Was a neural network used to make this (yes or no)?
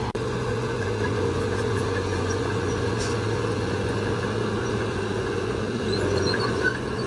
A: yes